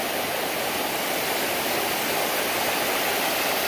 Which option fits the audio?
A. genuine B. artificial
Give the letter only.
A